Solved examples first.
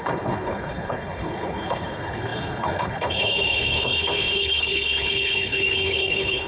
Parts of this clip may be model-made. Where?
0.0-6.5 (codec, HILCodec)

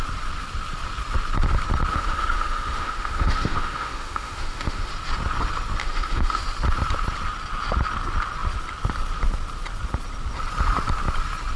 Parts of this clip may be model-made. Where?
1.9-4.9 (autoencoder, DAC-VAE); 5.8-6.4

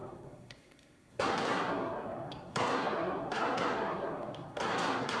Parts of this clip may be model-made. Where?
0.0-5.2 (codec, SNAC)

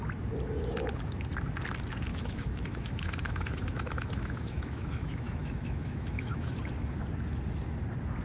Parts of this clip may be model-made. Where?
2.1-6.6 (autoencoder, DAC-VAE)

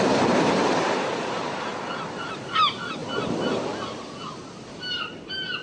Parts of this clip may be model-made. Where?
0.0-1.7 (vocoder, BigVGAN v2); 2.5-3.0; 4.8-5.6

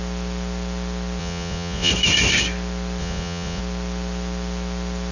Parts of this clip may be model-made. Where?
1.2-1.9 (vocoder, Vocos); 3.0-3.6